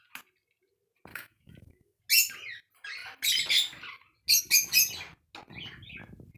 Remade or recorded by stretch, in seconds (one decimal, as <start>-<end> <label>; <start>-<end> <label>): 0.0-1.1 recorded; 1.1-2.0 remade; 2.0-6.4 recorded